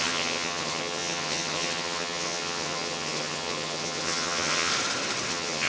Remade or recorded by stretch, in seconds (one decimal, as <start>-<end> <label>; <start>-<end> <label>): 0.0-4.7 remade; 4.7-5.3 recorded; 5.3-5.7 remade